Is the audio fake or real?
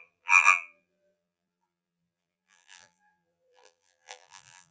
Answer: fake